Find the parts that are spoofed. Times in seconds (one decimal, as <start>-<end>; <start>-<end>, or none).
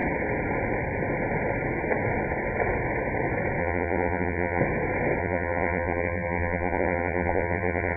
3.6-4.6; 5.2-8.0